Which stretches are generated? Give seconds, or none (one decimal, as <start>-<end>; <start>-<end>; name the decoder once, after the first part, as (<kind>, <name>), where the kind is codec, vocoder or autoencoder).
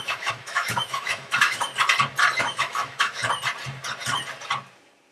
0.0-1.7 (autoencoder, DAC-VAE); 2.4-3.2